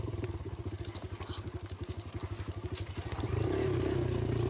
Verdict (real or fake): real